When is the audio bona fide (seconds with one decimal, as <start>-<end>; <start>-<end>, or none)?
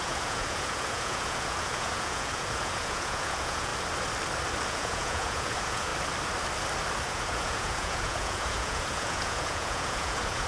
3.7-4.7; 5.9-7.1